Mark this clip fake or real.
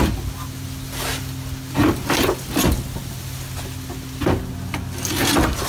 real